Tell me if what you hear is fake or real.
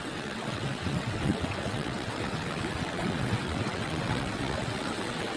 fake